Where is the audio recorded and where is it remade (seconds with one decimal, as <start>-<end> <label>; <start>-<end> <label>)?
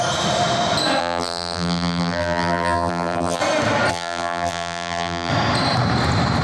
0.0-1.0 recorded; 1.0-3.4 remade; 3.4-3.9 recorded; 3.9-5.3 remade; 5.3-6.4 recorded